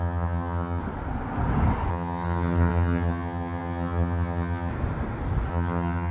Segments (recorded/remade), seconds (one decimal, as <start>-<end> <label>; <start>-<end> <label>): 0.0-0.8 remade; 0.8-1.9 recorded; 1.9-4.7 remade; 4.7-5.5 recorded; 5.5-6.1 remade